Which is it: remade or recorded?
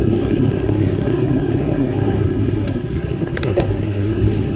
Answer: remade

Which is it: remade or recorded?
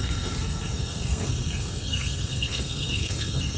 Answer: remade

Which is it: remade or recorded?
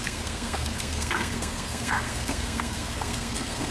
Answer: remade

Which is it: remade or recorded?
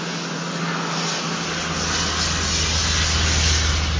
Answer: recorded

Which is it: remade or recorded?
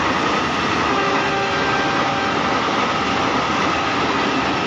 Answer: recorded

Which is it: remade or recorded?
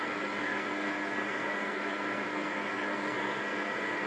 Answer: remade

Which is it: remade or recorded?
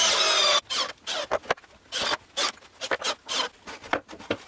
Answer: recorded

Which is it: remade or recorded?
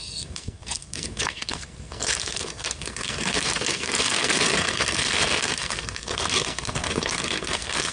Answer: remade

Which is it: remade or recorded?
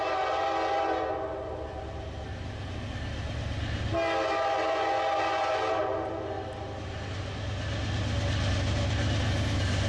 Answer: recorded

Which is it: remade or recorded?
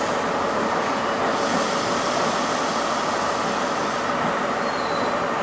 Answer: recorded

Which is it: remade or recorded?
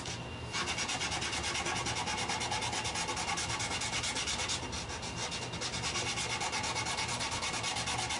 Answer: recorded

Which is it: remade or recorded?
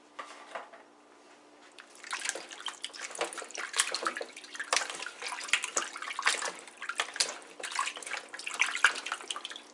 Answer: recorded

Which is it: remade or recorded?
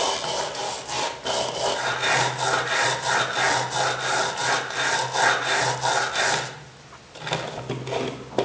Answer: recorded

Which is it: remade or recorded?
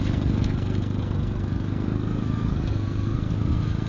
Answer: remade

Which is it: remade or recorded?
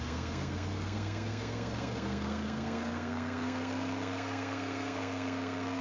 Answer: remade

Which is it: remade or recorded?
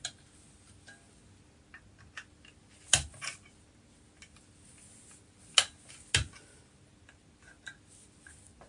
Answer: recorded